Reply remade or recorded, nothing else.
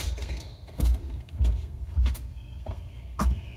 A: remade